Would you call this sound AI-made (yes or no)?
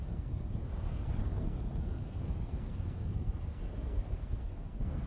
yes